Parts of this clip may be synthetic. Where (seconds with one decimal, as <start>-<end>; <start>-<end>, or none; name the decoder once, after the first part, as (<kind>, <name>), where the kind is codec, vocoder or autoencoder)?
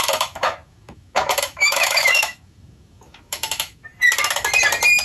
0.0-3.9 (autoencoder, DAC-VAE)